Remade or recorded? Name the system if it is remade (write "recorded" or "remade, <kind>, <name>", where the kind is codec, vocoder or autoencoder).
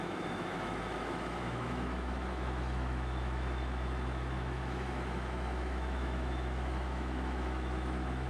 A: remade, autoencoder, DAC-VAE